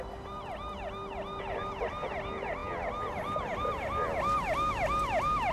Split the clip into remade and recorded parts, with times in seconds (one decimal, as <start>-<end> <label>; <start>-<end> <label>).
0.0-5.5 recorded